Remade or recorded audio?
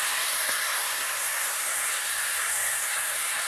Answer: remade